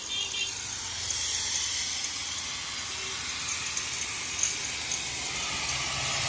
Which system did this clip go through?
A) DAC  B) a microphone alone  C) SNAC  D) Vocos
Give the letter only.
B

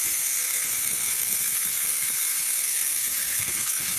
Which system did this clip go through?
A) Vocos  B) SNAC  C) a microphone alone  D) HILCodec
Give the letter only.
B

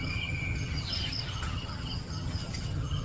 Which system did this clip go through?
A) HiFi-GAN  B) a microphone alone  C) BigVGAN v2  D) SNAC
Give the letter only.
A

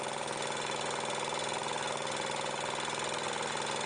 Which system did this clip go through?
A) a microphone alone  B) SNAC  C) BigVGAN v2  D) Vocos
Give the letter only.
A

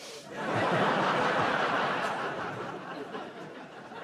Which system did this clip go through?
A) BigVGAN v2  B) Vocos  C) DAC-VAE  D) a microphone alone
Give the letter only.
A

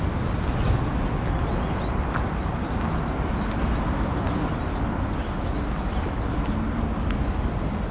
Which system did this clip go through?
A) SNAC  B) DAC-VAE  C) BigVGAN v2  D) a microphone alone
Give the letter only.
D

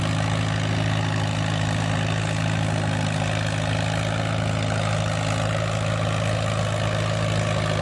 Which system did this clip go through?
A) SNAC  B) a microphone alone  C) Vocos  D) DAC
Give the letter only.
B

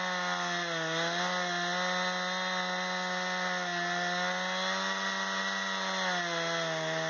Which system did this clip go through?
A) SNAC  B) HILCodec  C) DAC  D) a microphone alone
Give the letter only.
D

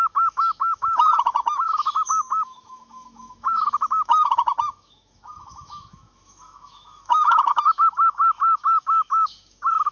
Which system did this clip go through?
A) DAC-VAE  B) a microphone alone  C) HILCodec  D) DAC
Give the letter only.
A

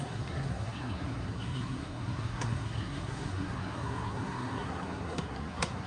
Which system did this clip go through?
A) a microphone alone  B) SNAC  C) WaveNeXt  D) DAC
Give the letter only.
B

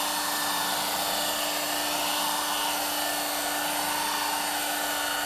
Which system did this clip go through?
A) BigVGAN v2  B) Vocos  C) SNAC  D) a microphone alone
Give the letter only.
D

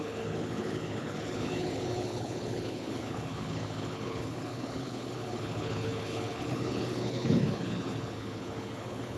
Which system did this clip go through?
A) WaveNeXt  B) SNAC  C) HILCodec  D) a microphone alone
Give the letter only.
C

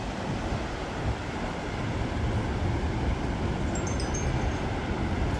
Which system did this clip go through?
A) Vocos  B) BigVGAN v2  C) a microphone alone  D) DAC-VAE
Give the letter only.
C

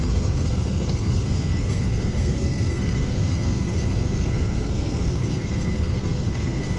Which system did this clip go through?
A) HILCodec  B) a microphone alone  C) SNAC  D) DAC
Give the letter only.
C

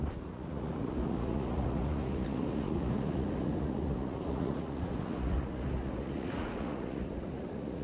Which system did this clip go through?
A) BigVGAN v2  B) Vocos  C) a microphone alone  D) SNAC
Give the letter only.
B